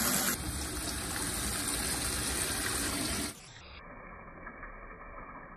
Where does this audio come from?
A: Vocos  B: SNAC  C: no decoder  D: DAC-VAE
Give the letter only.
C